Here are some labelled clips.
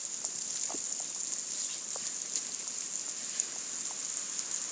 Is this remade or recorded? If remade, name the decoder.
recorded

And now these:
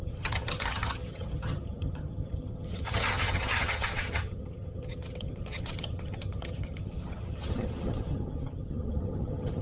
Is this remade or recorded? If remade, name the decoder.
remade, vocoder, HiFi-GAN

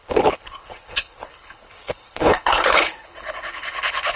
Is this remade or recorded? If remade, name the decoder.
remade, codec, HILCodec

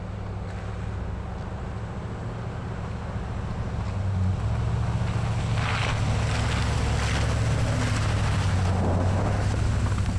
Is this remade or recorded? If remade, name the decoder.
recorded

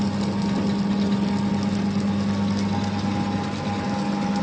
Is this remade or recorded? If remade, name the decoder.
recorded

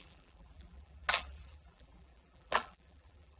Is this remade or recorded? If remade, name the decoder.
remade, vocoder, BigVGAN v2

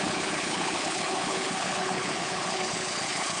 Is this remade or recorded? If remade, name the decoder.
remade, codec, HILCodec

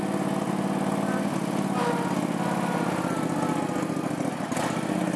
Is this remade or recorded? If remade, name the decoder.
recorded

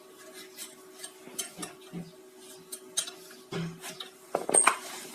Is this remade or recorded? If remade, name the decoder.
recorded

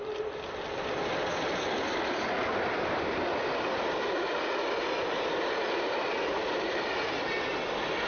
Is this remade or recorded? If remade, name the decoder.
recorded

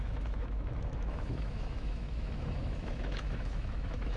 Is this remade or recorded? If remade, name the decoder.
remade, autoencoder, DAC-VAE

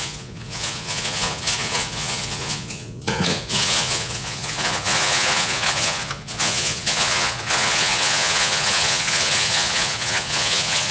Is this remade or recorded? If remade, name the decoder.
remade, vocoder, Vocos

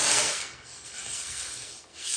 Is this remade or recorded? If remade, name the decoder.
remade, codec, SNAC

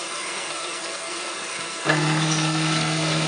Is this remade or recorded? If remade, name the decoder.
remade, codec, SNAC